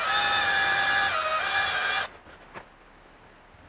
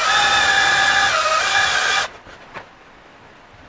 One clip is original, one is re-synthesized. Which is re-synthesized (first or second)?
second